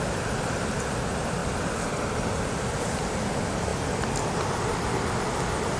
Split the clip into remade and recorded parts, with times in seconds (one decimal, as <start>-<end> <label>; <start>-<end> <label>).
0.0-1.4 recorded; 1.4-2.0 remade; 2.0-5.8 recorded